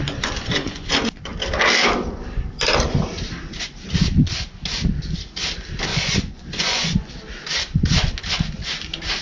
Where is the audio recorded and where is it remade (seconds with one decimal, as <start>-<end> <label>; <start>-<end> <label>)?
0.0-0.9 remade; 0.9-5.9 recorded; 5.9-7.1 remade; 7.1-9.2 recorded